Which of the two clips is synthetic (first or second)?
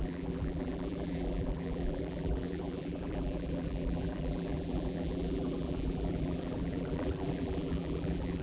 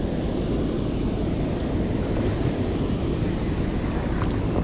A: first